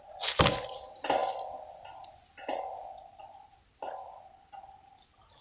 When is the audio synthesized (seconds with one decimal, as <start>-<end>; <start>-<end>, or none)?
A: none